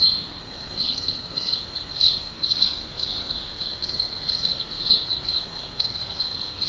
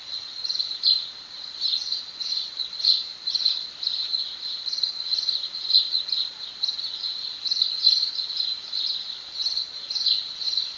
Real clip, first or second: second